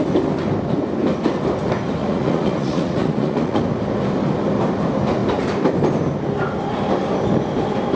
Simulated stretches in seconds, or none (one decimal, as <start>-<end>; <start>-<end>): 2.0-3.6

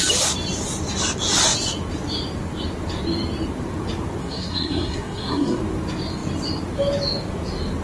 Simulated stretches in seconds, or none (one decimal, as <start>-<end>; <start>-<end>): 4.2-5.6

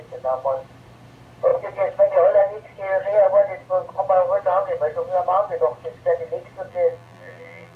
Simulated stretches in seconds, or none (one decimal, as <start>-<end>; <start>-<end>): 6.7-7.8

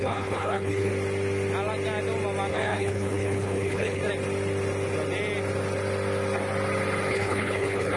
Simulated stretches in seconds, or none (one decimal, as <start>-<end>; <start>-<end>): 0.0-0.9; 2.5-4.0; 7.1-8.0

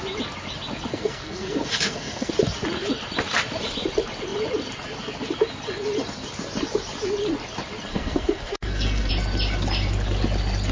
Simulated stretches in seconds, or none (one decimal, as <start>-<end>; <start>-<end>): 0.9-2.3; 7.9-9.1

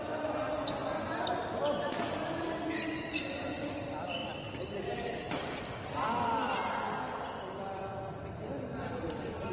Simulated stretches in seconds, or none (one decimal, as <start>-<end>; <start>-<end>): none

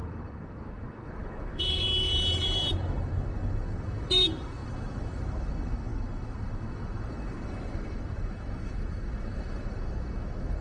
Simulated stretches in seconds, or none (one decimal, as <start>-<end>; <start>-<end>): 0.0-10.6

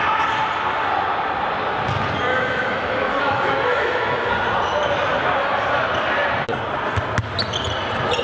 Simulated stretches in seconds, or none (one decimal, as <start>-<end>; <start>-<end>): 2.3-4.3